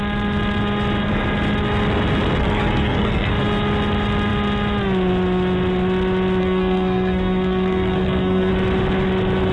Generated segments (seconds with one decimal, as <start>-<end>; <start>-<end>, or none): 2.4-3.3; 6.4-8.5